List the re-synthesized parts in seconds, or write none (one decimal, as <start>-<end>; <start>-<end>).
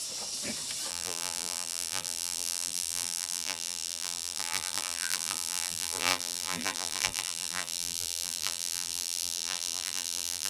0.9-10.5